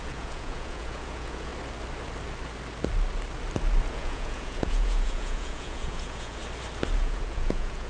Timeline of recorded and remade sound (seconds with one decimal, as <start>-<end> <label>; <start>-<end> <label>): 0.0-1.5 remade; 1.5-3.9 recorded; 3.9-6.4 remade; 6.4-7.0 recorded; 7.0-7.9 remade